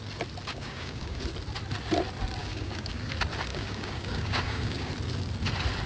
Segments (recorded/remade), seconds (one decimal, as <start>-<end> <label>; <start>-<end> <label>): 0.0-0.5 recorded; 0.5-1.2 remade; 1.2-2.4 recorded; 2.4-3.1 remade; 3.1-3.5 recorded; 3.5-4.9 remade; 4.9-5.9 recorded

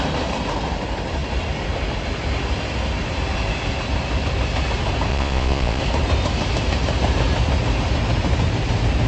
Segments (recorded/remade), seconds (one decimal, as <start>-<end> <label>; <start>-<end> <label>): 0.0-5.1 recorded; 5.1-5.8 remade; 5.8-9.1 recorded